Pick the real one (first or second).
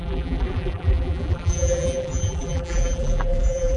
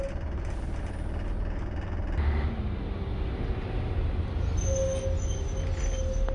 second